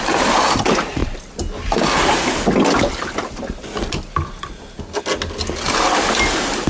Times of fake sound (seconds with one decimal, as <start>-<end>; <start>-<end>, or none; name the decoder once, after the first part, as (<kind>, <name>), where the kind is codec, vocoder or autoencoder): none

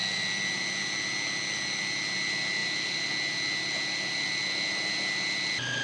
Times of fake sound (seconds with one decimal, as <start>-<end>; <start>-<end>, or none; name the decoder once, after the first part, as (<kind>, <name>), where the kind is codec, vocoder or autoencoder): 2.6-3.1 (vocoder, BigVGAN v2)

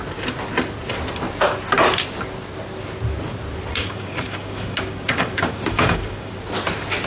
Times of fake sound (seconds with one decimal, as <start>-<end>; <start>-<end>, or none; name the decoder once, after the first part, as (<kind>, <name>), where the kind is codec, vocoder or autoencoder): 3.7-6.3 (codec, DAC)

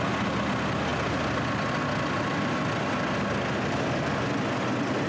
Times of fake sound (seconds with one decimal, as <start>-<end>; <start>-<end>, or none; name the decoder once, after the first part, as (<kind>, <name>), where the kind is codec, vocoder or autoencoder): none

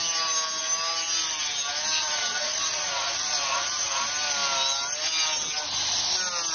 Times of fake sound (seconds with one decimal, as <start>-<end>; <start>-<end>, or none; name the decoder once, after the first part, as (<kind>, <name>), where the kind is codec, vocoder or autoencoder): 2.0-4.0 (vocoder, Vocos)

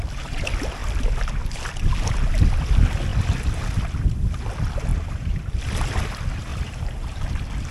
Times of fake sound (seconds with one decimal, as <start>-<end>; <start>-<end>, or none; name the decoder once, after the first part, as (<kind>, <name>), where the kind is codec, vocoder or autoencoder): 4.9-5.5 (vocoder, BigVGAN v2); 6.5-7.3

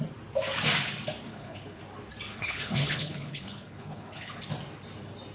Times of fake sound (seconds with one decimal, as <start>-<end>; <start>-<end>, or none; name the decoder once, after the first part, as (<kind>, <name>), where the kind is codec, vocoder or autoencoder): 1.3-1.8 (codec, HILCodec); 2.3-4.4